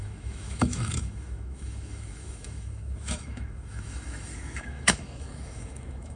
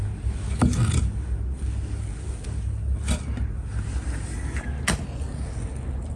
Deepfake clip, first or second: first